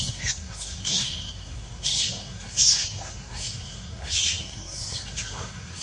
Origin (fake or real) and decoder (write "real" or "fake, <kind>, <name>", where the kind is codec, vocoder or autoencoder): fake, codec, SNAC